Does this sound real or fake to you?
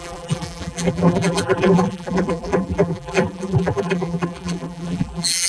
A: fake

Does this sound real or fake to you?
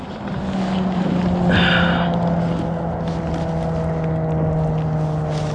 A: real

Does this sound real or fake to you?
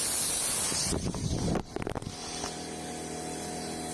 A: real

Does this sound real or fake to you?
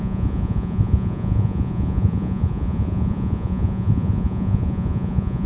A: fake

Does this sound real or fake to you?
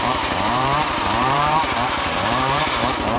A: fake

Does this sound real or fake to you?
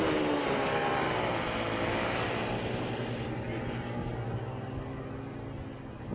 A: real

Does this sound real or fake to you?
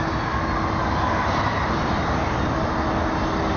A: real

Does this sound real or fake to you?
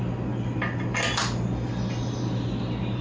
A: real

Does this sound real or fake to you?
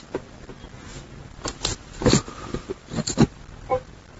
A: real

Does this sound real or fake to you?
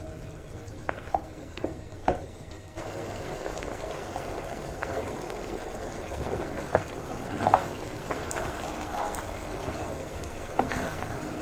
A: fake